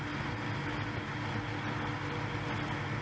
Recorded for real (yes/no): yes